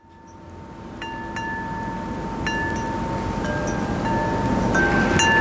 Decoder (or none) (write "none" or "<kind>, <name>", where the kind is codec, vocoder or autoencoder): none